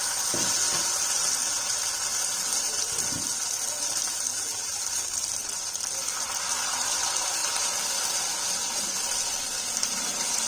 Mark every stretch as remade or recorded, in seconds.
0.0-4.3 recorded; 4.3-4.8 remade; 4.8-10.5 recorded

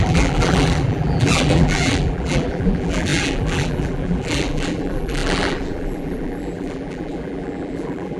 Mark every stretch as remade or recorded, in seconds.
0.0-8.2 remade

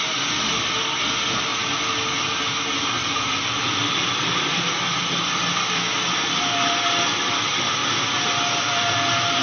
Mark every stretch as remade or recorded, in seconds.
0.0-9.4 recorded

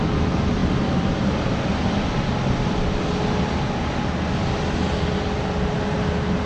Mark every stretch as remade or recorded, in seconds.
0.0-0.6 recorded; 0.6-1.6 remade; 1.6-6.5 recorded

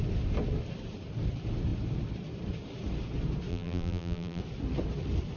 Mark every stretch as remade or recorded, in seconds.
0.0-3.5 recorded; 3.5-4.4 remade; 4.4-5.4 recorded

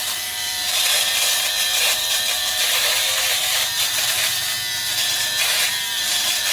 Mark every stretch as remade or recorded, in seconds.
0.0-4.5 remade; 4.5-5.4 recorded; 5.4-6.5 remade